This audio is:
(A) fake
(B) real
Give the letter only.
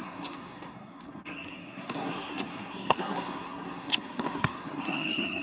A